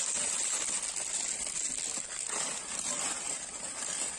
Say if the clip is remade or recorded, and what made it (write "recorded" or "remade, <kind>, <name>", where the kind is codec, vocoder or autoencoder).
recorded